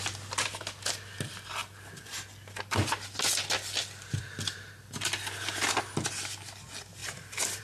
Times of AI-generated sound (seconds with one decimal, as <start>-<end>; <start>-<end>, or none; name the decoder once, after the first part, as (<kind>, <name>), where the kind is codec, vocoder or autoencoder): 1.6-5.6 (vocoder, BigVGAN v2)